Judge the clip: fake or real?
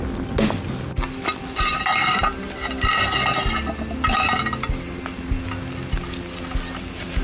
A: real